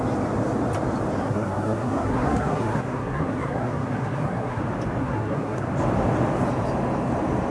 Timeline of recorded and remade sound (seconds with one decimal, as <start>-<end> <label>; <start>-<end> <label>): 0.0-1.2 recorded; 1.2-4.6 remade; 4.6-5.0 recorded; 5.0-5.7 remade; 5.7-7.5 recorded